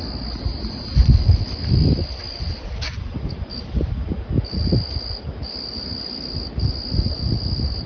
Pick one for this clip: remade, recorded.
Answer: recorded